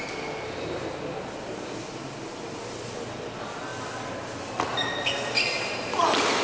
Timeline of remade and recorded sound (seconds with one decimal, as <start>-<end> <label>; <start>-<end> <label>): 0.0-6.4 recorded